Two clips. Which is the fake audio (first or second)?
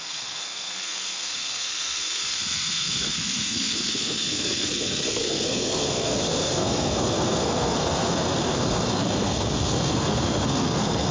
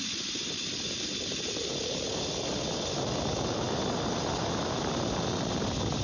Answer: first